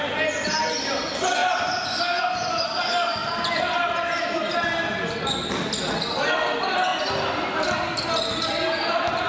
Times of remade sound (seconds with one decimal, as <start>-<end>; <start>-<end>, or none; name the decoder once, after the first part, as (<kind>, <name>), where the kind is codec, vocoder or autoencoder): 3.2-4.4 (vocoder, BigVGAN v2)